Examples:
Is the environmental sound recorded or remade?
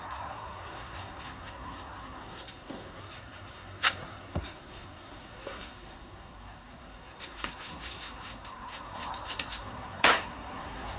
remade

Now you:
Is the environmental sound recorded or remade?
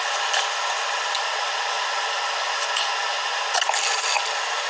recorded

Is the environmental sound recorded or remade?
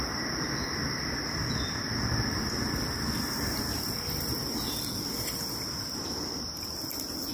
recorded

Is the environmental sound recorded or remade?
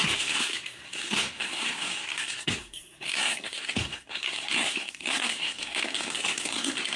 remade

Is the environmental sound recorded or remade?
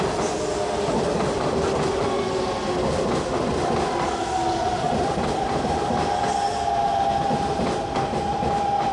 recorded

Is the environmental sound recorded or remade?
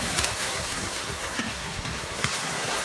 remade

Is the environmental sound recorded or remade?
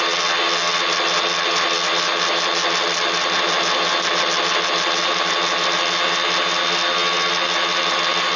recorded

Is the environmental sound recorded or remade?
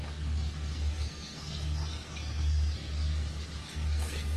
remade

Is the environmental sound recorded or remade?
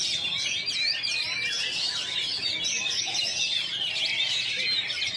recorded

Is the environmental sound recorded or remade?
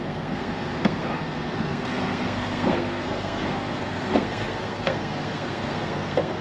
remade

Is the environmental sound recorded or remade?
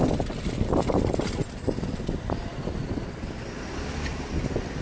recorded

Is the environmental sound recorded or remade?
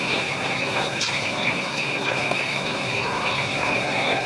remade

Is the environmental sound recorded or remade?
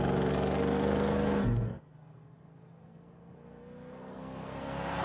remade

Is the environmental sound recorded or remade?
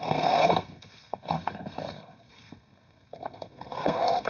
remade